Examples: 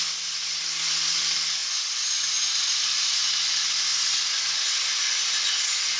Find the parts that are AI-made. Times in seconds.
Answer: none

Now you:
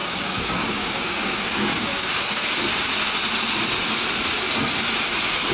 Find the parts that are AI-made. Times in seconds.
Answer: 0.0-2.5 (codec, DAC)

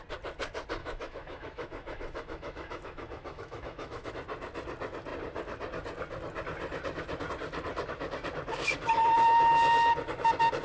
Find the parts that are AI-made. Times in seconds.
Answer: 0.8-4.1 (autoencoder, DAC-VAE)

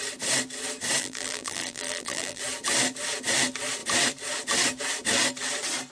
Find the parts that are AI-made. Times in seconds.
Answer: 1.0-2.4 (vocoder, BigVGAN v2)

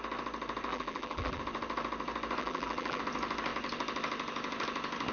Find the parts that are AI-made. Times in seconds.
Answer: 0.7-1.4 (vocoder, BigVGAN v2); 2.4-3.0

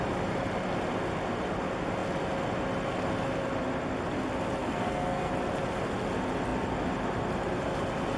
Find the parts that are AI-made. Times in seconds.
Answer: 4.6-5.3 (codec, SNAC)